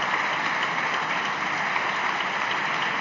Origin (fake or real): real